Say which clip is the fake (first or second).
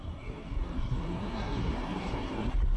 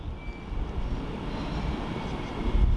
first